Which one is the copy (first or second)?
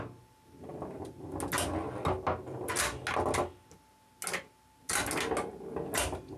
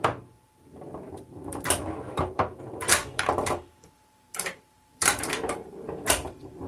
second